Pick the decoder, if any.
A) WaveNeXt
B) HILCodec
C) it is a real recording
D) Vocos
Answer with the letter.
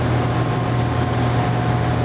C